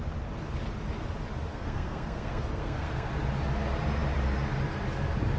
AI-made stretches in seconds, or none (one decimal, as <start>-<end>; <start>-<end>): 1.5-3.1